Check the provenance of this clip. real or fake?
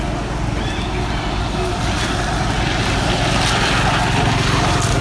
real